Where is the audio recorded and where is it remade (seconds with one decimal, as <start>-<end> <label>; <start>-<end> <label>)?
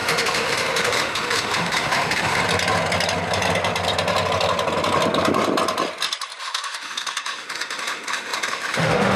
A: 0.0-2.4 remade; 2.4-6.4 recorded; 6.4-9.2 remade